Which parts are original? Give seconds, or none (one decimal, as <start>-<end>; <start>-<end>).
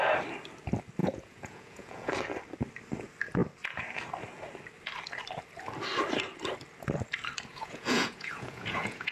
0.0-1.0; 2.1-7.5